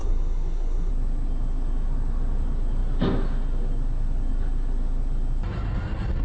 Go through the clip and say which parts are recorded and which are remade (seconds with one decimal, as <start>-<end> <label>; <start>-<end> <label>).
0.0-0.9 remade; 0.9-6.2 recorded